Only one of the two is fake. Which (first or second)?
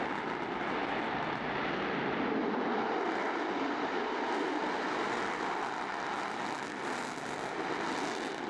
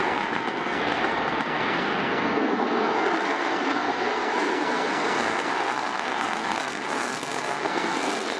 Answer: second